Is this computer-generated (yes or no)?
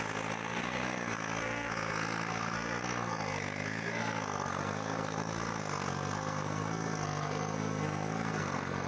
yes